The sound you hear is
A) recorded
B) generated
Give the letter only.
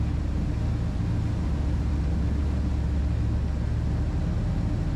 A